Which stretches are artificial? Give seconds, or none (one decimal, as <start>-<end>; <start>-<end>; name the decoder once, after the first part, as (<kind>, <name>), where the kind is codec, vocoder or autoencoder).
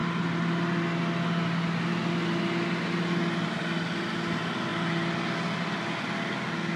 none